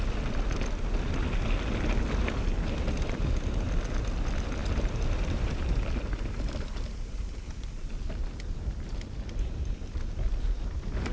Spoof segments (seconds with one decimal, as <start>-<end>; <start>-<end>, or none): none